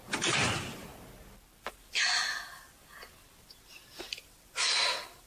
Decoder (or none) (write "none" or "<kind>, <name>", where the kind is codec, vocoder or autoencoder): none